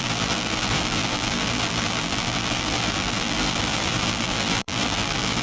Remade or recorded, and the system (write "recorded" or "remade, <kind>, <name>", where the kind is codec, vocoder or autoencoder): remade, vocoder, BigVGAN v2